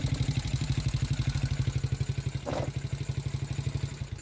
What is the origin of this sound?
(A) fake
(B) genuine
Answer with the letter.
B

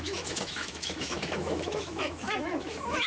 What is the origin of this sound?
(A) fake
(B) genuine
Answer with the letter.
A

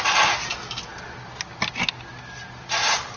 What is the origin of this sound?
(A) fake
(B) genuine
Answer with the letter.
B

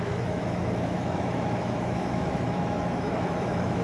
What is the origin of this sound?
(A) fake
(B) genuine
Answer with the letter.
A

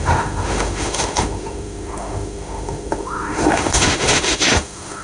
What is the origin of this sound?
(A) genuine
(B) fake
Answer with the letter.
B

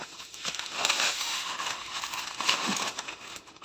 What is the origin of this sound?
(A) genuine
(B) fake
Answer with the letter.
B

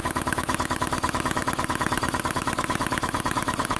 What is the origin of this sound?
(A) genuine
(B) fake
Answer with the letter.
B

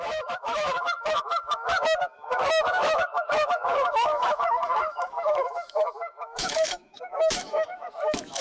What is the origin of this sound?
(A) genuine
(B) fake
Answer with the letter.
B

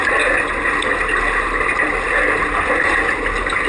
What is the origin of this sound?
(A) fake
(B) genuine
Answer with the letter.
B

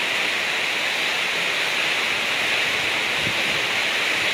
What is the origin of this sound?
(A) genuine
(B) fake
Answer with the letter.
A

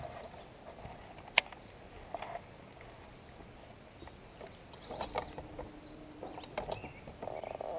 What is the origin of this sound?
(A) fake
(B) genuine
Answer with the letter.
B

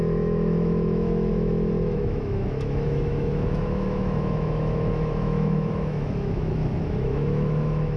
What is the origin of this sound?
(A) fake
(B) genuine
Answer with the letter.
A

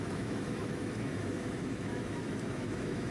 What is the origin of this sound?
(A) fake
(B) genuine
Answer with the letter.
A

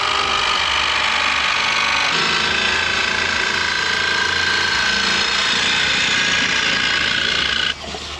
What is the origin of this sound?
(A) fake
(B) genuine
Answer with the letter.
B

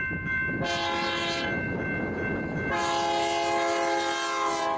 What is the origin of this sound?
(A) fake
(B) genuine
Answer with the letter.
B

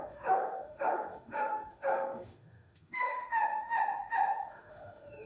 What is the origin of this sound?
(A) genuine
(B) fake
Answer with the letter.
B